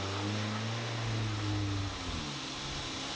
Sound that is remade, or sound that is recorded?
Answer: recorded